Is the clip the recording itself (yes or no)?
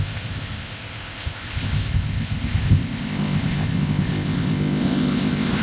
no